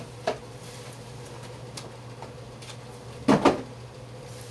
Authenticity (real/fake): real